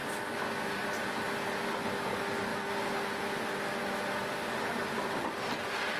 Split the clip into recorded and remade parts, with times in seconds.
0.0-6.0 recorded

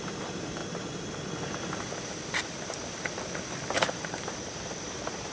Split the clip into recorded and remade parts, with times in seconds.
0.0-0.6 remade; 0.6-3.8 recorded; 3.8-5.3 remade

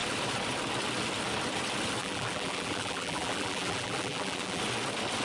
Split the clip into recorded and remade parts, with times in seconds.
0.0-2.0 recorded; 2.0-4.6 remade; 4.6-5.2 recorded

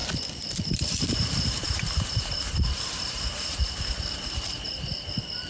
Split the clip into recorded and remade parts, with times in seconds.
0.0-0.6 recorded; 0.6-5.5 remade

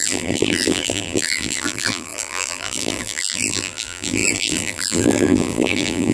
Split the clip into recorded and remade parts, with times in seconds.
0.0-6.1 remade

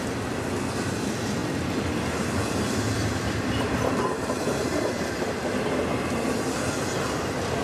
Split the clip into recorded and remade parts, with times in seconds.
0.0-1.4 recorded; 1.4-5.1 remade; 5.1-7.6 recorded